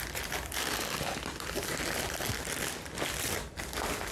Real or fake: real